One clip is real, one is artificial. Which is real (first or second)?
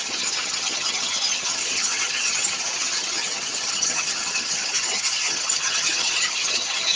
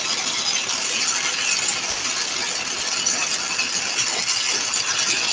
second